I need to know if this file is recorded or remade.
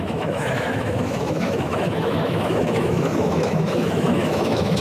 remade